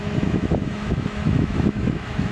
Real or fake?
fake